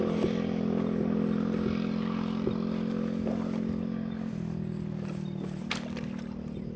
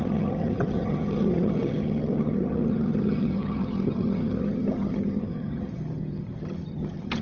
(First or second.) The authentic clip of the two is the first